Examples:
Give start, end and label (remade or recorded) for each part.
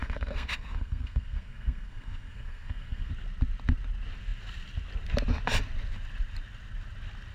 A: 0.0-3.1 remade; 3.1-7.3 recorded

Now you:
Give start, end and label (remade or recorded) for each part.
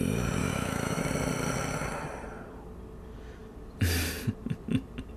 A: 0.0-0.4 recorded; 0.4-1.0 remade; 1.0-5.2 recorded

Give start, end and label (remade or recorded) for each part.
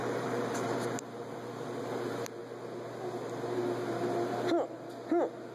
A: 0.0-2.4 remade; 2.4-5.5 recorded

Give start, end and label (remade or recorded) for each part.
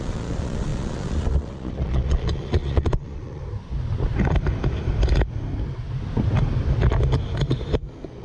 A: 0.0-3.4 remade; 3.4-8.2 recorded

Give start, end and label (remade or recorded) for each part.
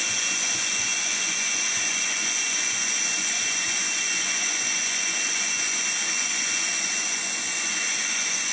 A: 0.0-8.5 remade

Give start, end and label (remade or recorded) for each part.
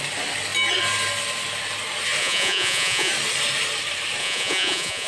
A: 0.0-2.2 recorded; 2.2-3.1 remade; 3.1-4.2 recorded; 4.2-5.1 remade